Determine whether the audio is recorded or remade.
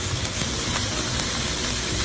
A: recorded